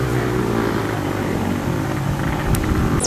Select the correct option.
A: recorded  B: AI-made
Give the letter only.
A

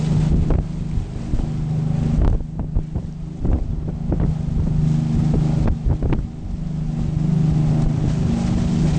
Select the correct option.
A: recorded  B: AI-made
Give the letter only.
A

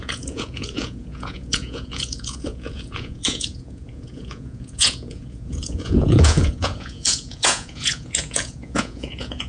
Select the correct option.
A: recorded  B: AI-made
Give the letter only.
B